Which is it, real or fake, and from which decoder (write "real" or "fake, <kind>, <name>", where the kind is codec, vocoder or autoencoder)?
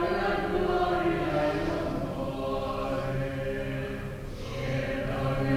real